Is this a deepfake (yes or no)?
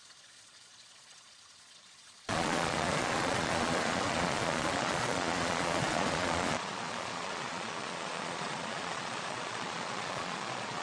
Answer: yes